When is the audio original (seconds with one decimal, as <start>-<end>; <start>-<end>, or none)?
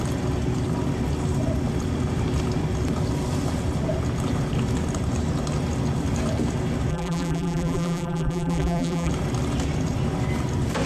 0.0-6.9; 9.1-10.9